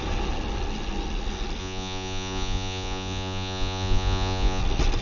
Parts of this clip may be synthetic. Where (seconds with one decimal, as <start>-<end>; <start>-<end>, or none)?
1.6-4.6

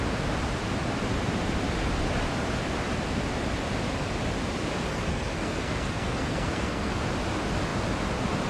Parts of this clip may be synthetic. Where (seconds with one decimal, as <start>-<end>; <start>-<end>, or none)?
4.9-7.0

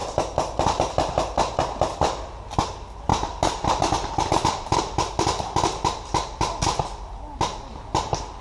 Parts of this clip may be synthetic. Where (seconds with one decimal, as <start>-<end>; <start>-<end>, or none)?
none

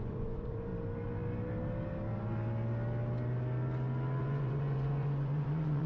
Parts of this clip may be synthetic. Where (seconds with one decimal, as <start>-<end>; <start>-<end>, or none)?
0.0-0.7; 4.2-5.9